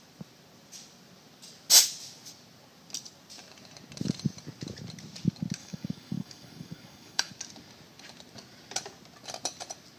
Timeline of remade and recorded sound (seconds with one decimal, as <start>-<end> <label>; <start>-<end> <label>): 0.0-5.6 recorded; 5.6-7.3 remade; 7.3-10.0 recorded